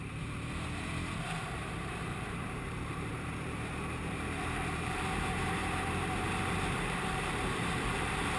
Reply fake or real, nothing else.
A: fake